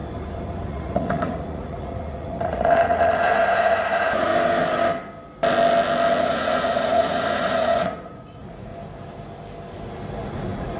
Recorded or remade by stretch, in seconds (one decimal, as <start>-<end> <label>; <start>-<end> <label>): 0.0-0.7 recorded; 0.7-4.3 remade; 4.3-6.2 recorded; 6.2-8.7 remade; 8.7-10.2 recorded; 10.2-10.8 remade